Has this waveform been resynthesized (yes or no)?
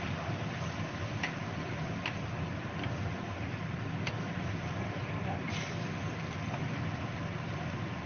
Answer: no